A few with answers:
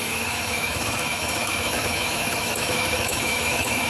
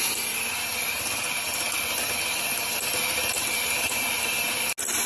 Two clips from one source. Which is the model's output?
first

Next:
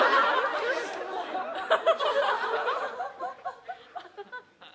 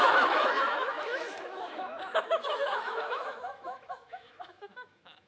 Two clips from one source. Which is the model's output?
second